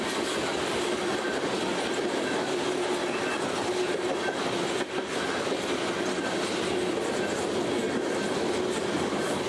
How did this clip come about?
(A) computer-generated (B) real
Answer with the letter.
B